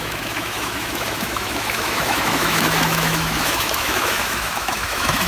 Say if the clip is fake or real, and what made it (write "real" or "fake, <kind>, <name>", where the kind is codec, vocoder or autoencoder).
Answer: fake, autoencoder, DAC-VAE